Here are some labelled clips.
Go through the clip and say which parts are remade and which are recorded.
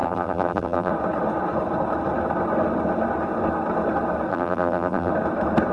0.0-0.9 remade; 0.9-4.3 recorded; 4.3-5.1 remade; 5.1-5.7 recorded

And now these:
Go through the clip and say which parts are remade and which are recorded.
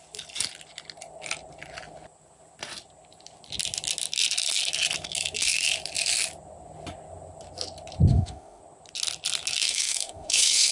0.0-8.1 recorded; 8.1-8.6 remade; 8.6-9.6 recorded; 9.6-10.7 remade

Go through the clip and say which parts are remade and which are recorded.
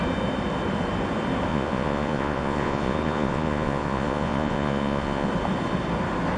0.0-1.5 recorded; 1.5-5.3 remade; 5.3-6.4 recorded